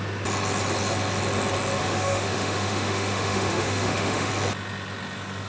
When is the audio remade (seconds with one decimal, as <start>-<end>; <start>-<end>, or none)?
1.8-4.3